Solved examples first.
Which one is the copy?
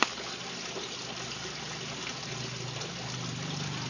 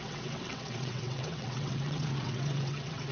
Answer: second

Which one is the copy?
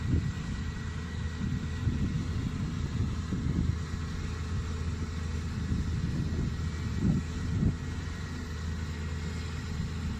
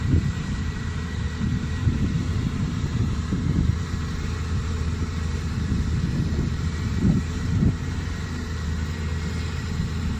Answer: second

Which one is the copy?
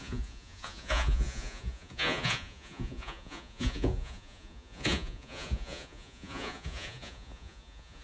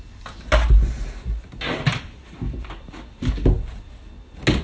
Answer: first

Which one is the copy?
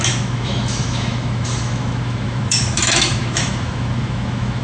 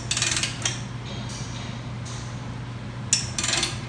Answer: first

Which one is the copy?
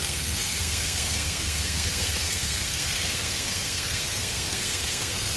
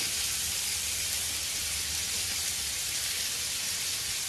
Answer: first